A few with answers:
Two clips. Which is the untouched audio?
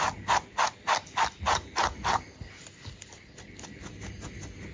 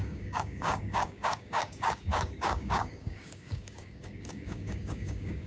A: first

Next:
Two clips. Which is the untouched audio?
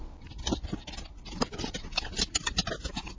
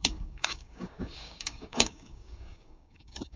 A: first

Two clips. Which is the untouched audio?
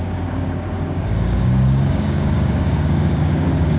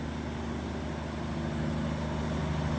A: second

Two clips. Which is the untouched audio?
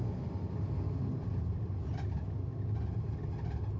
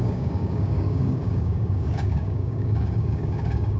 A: first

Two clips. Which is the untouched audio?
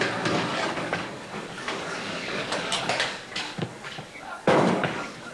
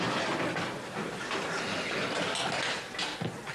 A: second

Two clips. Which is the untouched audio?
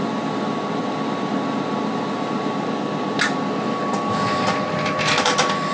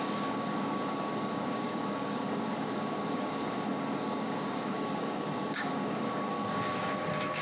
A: first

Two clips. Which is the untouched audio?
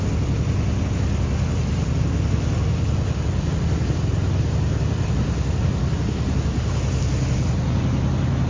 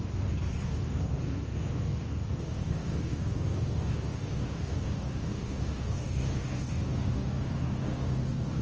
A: first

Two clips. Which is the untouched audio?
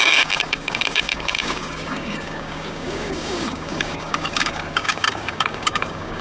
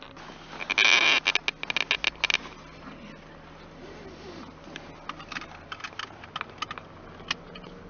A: second